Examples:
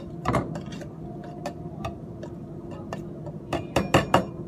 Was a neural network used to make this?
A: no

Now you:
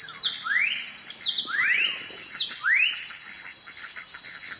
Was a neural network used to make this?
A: no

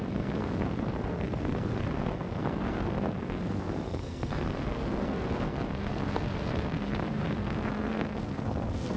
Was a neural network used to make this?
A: yes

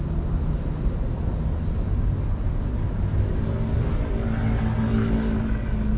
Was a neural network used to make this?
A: no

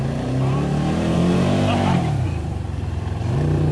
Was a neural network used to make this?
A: yes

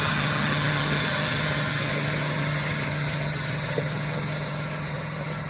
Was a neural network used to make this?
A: yes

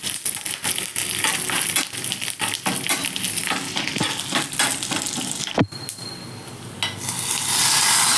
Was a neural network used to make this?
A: no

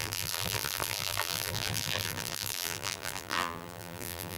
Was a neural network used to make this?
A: yes